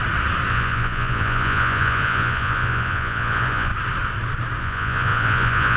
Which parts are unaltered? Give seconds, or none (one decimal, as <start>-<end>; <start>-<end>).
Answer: 0.0-0.5; 3.7-4.6